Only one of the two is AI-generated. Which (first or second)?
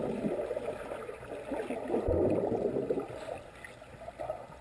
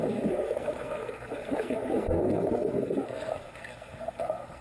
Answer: second